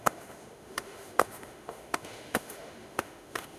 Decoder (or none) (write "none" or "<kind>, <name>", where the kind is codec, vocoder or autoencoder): autoencoder, DAC-VAE